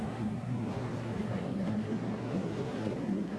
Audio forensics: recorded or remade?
remade